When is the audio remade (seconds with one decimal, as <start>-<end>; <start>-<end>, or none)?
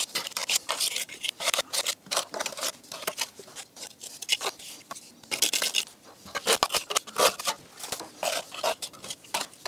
0.0-4.2; 8.6-9.7